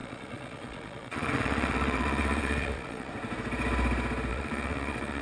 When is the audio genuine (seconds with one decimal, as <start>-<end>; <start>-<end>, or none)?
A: 3.1-4.3